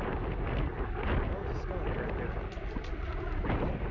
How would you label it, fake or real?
real